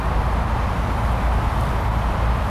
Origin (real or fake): real